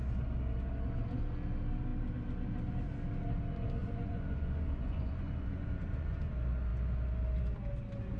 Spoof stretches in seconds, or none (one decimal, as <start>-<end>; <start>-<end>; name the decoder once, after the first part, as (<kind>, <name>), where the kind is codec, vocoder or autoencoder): 3.8-6.3 (vocoder, Vocos)